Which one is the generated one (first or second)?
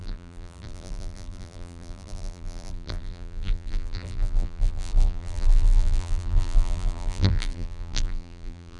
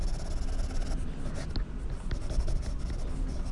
first